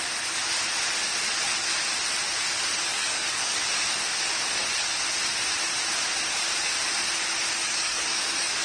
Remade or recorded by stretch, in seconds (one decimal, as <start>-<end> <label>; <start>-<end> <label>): 0.0-2.9 recorded; 2.9-3.6 remade; 3.6-7.6 recorded; 7.6-8.6 remade